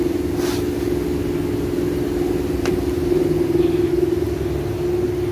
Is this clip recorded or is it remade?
recorded